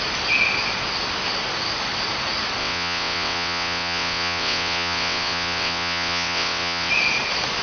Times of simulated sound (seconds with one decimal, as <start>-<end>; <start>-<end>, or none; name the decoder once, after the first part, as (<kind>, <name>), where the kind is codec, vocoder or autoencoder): 2.6-6.9 (vocoder, WaveNeXt)

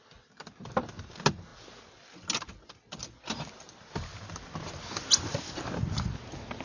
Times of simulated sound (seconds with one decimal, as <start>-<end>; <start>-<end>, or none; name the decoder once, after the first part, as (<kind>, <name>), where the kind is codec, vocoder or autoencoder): none

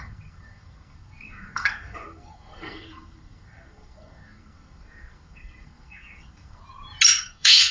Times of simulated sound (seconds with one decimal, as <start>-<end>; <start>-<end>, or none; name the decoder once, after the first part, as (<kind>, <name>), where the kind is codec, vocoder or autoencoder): 0.0-6.6 (codec, SNAC); 7.2-7.7